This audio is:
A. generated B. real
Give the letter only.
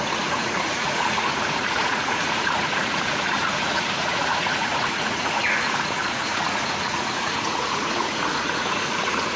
A